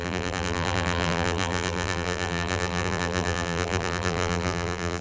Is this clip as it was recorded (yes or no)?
no